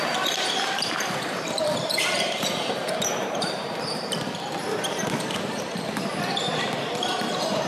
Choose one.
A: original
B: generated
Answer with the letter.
B